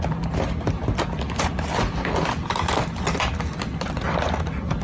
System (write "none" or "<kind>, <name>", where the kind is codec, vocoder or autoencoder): none